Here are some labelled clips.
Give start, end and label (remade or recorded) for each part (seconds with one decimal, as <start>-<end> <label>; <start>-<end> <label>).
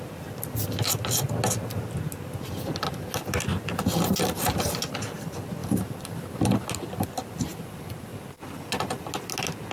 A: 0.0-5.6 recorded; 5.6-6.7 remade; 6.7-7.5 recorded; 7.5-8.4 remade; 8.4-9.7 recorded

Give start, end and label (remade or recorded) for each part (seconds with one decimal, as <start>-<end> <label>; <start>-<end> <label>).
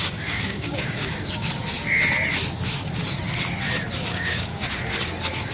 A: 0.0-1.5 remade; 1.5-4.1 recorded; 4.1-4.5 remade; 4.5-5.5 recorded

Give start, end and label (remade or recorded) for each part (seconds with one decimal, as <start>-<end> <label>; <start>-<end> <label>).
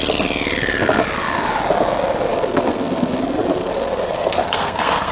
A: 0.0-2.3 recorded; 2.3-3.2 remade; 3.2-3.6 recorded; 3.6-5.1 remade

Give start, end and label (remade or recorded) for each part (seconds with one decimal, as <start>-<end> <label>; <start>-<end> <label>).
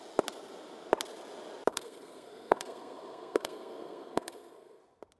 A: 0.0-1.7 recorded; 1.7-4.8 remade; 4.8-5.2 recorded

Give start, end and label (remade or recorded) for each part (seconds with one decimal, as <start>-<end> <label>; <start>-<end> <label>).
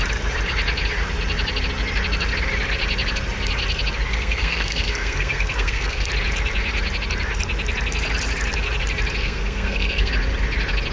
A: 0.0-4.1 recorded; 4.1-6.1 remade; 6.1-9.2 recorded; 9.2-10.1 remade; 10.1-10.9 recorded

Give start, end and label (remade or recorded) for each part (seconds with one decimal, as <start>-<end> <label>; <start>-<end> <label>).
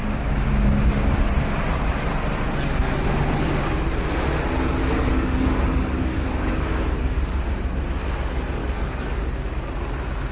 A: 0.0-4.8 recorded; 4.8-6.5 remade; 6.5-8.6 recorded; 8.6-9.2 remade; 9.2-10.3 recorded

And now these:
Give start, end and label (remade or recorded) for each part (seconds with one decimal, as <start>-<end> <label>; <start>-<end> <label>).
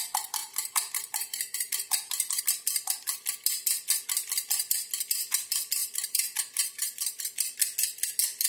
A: 0.0-0.4 recorded; 0.4-2.4 remade; 2.4-5.8 recorded; 5.8-7.2 remade; 7.2-8.5 recorded